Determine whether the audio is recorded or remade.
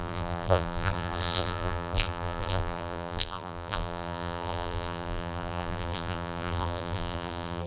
remade